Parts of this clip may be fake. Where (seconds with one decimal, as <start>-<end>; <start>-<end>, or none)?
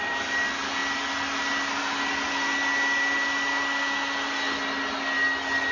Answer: none